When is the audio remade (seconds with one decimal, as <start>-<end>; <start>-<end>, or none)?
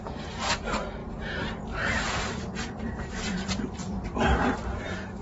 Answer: 0.0-5.2